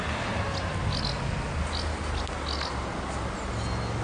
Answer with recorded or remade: recorded